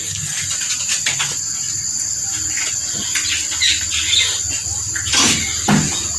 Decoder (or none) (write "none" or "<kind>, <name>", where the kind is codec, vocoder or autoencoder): none